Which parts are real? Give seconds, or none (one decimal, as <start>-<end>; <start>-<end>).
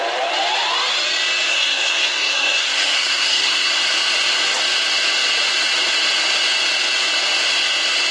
0.0-1.5; 3.7-8.1